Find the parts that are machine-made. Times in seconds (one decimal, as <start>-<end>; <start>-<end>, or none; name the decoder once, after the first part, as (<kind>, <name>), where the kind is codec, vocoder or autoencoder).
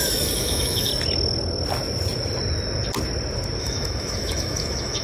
0.0-0.9 (autoencoder, DAC-VAE); 3.6-5.0